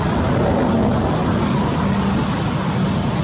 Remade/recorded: recorded